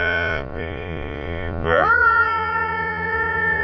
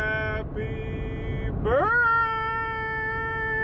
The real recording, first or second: second